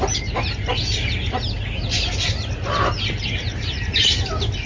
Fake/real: real